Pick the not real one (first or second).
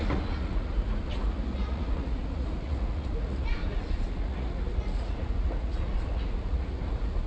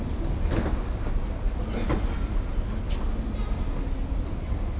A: first